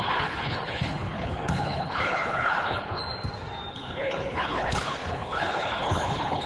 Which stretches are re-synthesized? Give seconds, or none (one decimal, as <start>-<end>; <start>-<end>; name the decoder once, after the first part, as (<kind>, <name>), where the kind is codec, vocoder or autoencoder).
0.0-3.0 (codec, HILCodec); 3.7-6.5